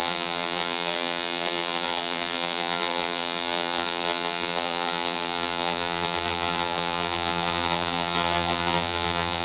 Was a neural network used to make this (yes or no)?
yes